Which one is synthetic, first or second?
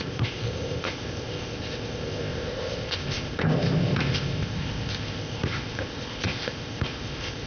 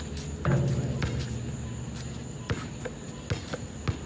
first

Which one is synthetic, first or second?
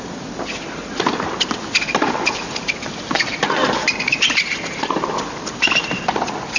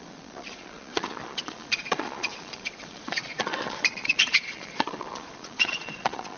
second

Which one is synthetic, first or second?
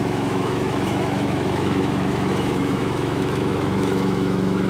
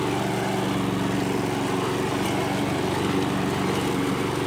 first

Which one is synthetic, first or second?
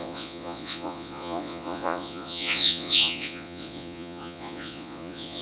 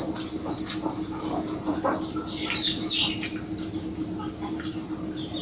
first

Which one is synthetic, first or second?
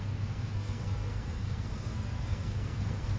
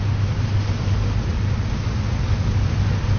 first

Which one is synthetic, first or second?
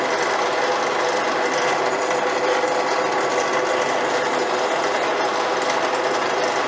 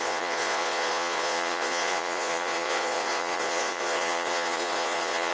second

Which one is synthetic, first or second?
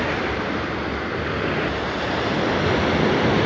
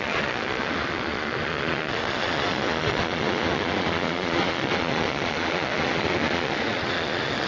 second